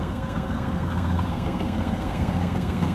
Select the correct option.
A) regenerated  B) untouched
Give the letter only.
A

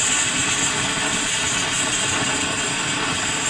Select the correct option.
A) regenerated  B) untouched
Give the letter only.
B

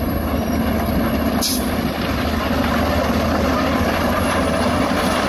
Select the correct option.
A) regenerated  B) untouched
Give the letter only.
B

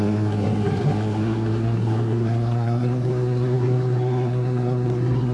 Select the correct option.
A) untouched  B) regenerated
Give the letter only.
B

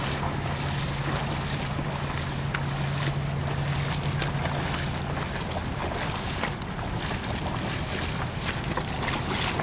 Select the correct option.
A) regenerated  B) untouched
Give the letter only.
B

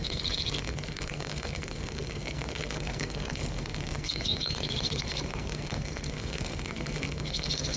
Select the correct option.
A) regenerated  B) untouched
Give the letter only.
A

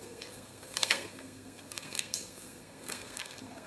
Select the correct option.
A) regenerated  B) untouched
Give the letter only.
A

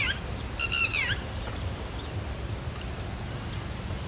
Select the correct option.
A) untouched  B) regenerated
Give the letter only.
A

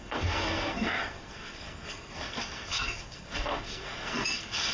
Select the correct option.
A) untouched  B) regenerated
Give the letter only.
B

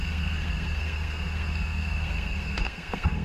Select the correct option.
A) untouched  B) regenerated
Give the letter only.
B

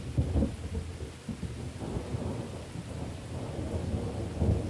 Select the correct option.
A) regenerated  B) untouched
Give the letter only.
B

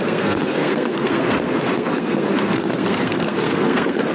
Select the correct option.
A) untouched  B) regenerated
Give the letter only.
B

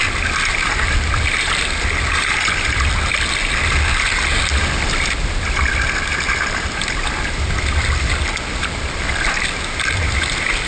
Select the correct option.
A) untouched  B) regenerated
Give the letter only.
A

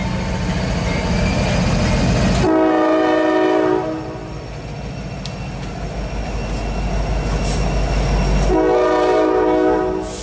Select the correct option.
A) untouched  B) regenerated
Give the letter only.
A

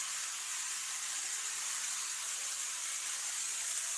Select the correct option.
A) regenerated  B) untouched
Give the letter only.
B